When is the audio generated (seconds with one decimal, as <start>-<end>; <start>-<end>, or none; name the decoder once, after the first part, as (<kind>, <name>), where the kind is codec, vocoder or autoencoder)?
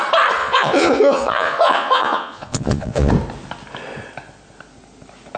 0.4-3.1 (vocoder, Vocos)